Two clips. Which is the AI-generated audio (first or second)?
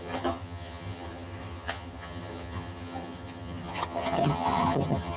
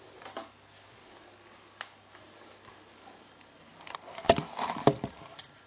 first